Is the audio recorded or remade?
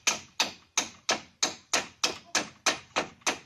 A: recorded